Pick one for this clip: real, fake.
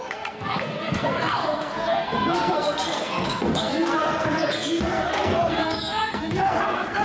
fake